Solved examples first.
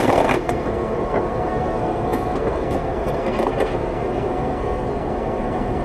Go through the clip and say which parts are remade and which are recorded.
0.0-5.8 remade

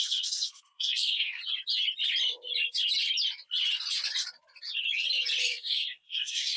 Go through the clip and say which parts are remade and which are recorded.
0.0-1.4 remade; 1.4-5.4 recorded; 5.4-6.6 remade